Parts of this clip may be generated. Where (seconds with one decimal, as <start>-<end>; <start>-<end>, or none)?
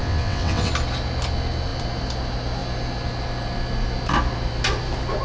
0.0-0.7